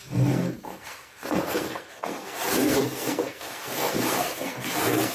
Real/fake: fake